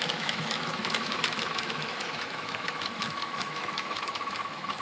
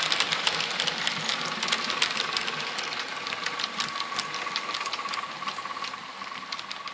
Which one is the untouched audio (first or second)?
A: second